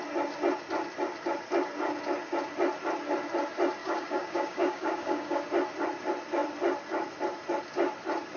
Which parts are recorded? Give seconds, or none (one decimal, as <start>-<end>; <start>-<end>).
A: 0.0-3.8; 5.4-8.4